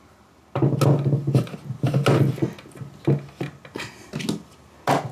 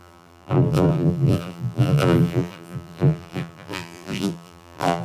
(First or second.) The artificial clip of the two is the second